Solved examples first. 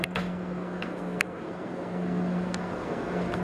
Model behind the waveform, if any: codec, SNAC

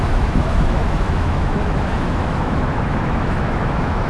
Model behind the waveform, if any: autoencoder, DAC-VAE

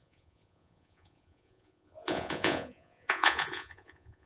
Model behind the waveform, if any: vocoder, Vocos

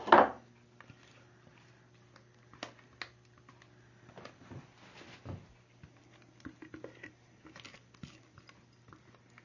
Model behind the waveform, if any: none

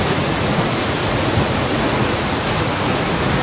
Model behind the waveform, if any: vocoder, Vocos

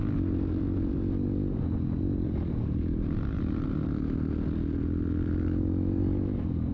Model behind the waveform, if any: none